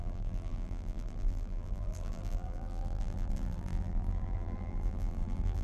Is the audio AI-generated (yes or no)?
yes